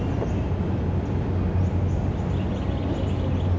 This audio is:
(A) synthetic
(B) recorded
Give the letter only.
B